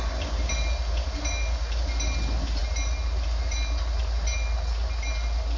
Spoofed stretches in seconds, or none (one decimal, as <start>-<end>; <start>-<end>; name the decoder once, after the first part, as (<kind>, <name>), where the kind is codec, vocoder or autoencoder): none